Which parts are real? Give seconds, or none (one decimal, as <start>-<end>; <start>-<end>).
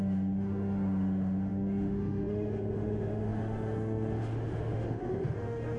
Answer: none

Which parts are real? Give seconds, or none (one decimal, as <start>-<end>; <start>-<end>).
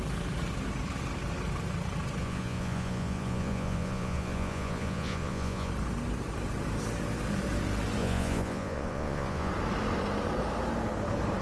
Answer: 0.0-2.2; 5.7-8.0; 9.5-11.4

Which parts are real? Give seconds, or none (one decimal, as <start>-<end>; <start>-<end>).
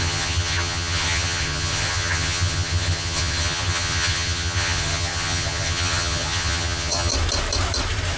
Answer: 7.1-8.2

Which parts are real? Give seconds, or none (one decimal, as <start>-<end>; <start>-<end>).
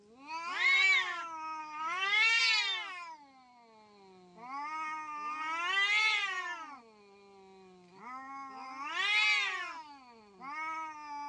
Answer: 0.0-1.6; 2.4-11.3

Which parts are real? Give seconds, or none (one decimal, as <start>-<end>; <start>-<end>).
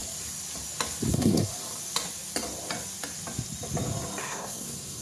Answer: 0.0-1.1; 1.5-4.2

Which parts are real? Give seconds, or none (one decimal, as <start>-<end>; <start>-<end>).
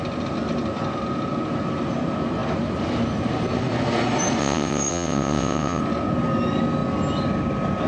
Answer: 0.0-4.4; 5.8-7.9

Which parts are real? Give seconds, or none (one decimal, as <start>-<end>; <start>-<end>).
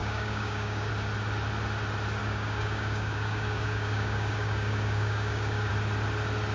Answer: 0.9-2.2; 5.7-6.5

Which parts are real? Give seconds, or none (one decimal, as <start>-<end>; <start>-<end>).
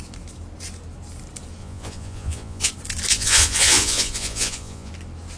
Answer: 0.0-1.6; 2.7-3.1; 4.9-5.4